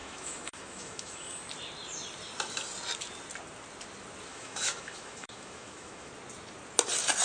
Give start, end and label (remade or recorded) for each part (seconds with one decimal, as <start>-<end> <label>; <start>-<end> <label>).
0.0-1.4 remade; 1.4-4.3 recorded; 4.3-6.1 remade; 6.1-7.2 recorded